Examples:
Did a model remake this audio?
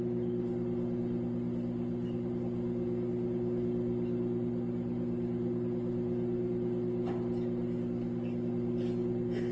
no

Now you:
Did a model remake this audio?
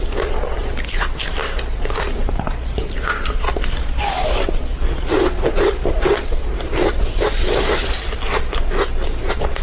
no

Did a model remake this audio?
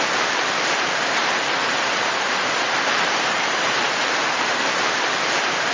yes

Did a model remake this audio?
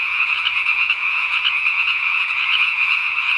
yes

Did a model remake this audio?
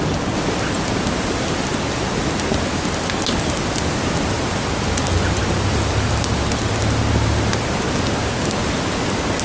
no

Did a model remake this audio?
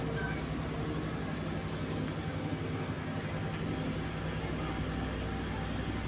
no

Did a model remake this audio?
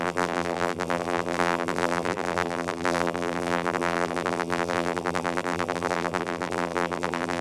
yes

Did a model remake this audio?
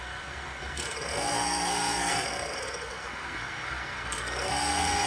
yes